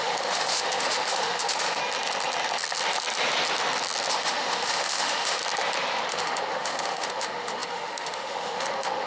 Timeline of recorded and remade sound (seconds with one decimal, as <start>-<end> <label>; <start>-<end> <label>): 0.0-1.8 remade; 1.8-4.1 recorded; 4.1-5.4 remade; 5.4-6.1 recorded; 6.1-9.1 remade